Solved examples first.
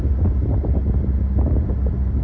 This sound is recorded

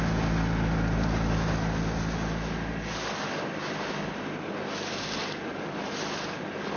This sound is recorded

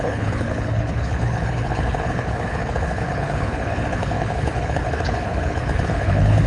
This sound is remade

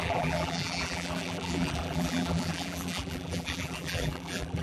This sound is remade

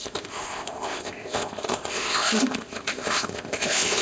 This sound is remade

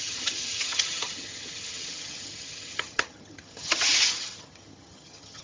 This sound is remade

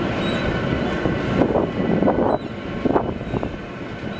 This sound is recorded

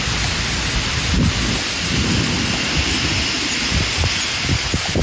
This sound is recorded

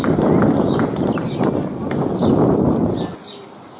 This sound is recorded